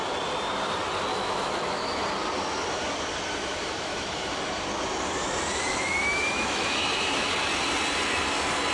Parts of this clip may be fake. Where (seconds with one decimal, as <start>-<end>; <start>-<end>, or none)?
1.1-2.0; 3.4-4.4; 5.7-7.3